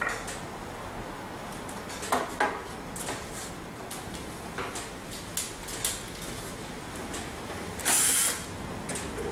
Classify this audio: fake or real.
real